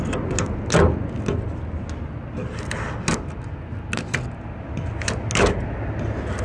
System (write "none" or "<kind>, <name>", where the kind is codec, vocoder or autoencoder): none